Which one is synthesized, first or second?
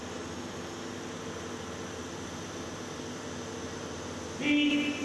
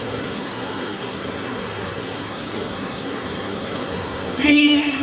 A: second